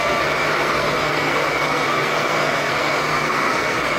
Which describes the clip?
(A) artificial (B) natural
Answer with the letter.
A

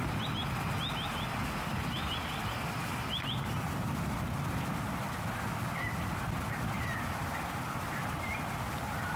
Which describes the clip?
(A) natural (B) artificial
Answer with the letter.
A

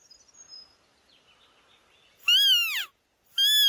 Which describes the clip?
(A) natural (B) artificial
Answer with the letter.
A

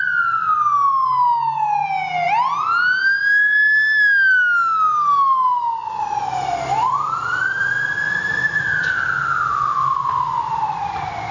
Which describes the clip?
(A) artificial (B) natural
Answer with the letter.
B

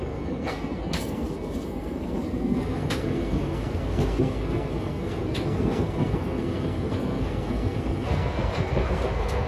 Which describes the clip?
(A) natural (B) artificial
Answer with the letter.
B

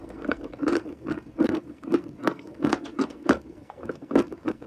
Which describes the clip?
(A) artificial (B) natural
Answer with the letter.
A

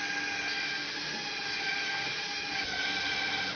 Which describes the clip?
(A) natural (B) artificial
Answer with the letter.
A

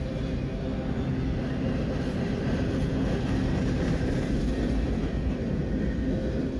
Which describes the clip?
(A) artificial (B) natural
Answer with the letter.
B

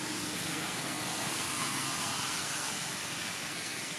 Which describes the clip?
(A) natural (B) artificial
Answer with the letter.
B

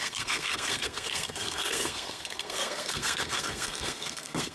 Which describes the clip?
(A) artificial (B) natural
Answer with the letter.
A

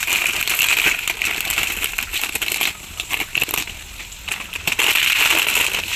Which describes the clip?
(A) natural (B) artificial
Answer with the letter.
A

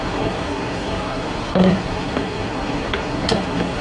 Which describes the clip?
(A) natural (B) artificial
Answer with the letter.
B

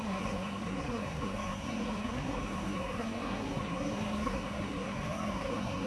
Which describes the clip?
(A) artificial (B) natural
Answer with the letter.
A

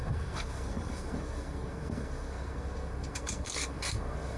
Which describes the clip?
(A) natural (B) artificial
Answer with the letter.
B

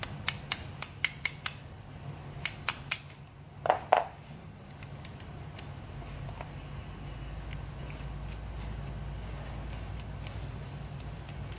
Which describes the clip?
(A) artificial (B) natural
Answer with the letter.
B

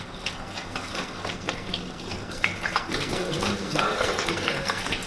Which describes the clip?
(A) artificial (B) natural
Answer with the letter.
A